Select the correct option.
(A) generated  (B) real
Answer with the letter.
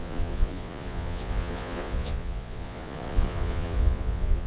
A